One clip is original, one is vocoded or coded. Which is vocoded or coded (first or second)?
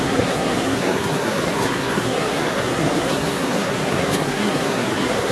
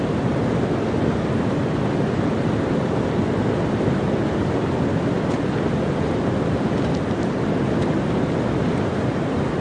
first